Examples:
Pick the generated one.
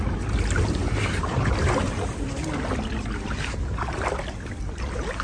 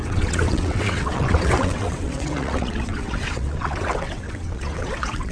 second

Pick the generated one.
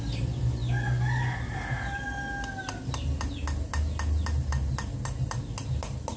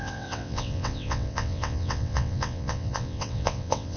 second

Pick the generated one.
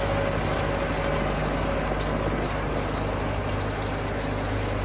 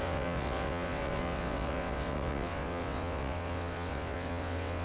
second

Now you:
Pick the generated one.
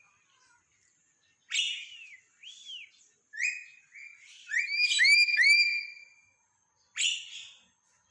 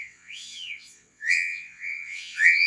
second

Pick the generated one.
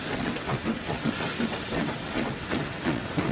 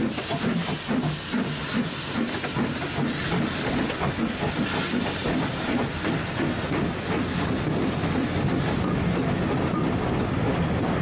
first